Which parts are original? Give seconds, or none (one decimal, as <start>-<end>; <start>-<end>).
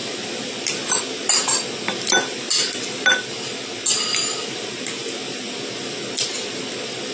0.0-7.1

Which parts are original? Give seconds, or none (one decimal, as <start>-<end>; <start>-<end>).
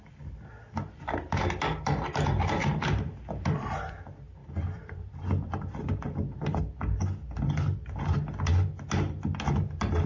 0.0-2.6; 3.7-4.4; 6.6-10.1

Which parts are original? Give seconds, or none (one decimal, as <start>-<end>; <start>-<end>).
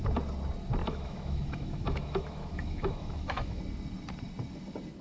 0.0-0.8; 3.6-5.0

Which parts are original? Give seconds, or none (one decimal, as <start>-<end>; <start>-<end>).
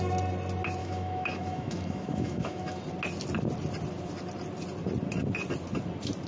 0.0-0.8; 2.8-6.3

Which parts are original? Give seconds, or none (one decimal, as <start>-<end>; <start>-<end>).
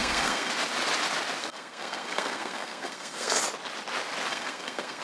0.5-1.4; 3.4-4.3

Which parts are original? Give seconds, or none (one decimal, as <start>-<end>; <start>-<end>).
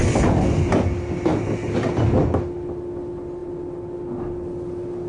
0.0-5.1